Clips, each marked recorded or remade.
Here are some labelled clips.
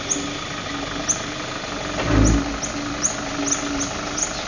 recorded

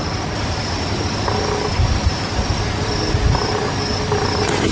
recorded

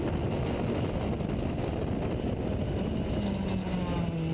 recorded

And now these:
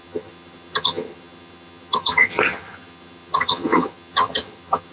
remade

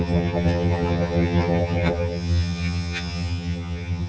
remade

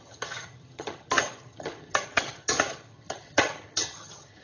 remade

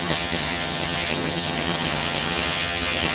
remade